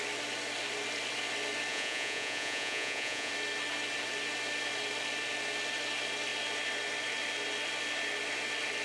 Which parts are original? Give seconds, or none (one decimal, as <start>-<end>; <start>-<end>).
0.0-1.7; 3.3-8.8